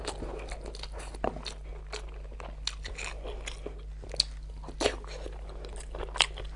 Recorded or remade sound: recorded